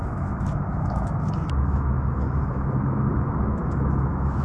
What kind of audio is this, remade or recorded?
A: remade